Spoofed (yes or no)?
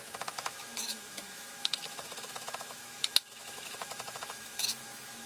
yes